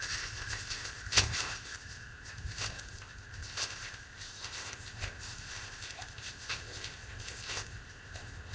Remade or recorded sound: remade